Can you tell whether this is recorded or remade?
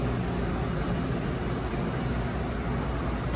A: recorded